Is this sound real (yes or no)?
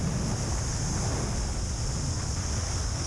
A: yes